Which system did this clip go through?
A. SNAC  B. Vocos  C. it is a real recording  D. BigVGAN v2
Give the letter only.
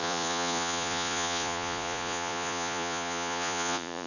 B